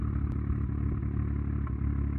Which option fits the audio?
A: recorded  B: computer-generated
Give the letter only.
A